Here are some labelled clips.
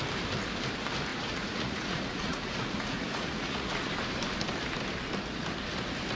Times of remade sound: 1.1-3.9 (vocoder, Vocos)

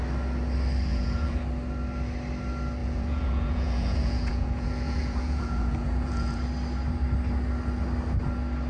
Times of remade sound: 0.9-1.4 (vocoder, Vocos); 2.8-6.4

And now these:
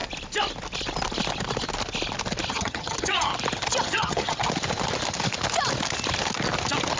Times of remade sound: 2.5-3.3 (vocoder, HiFi-GAN); 3.8-4.4